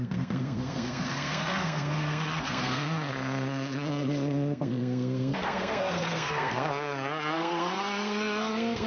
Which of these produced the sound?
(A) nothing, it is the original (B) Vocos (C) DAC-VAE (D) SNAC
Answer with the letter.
D